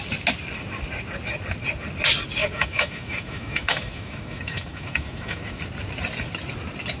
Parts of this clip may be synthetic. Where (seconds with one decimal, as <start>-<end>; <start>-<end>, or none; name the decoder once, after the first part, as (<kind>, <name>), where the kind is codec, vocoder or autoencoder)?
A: 2.4-5.6 (autoencoder, DAC-VAE)